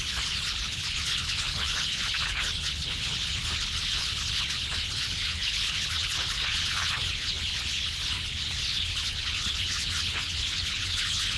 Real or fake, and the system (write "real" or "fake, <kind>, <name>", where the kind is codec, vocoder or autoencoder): fake, codec, HILCodec